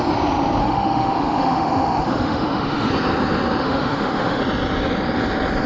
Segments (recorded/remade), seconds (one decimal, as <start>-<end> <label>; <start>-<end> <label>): 0.0-0.6 recorded; 0.6-2.9 remade; 2.9-3.6 recorded; 3.6-4.4 remade; 4.4-5.7 recorded